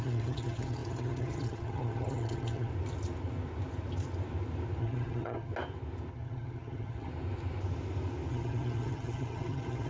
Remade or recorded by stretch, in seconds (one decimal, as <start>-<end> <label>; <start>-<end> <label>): 0.0-2.7 remade; 2.7-4.8 recorded; 4.8-5.5 remade; 5.5-6.1 recorded; 6.1-7.1 remade; 7.1-8.3 recorded; 8.3-9.9 remade